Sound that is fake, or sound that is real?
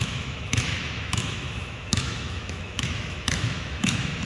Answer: fake